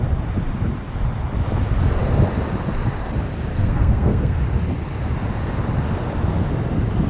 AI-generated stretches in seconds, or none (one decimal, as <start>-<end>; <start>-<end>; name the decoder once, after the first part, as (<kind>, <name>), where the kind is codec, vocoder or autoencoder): 3.5-4.4 (codec, SNAC)